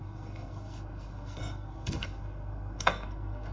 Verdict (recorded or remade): remade